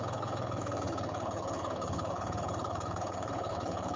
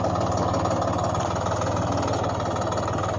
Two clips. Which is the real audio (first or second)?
second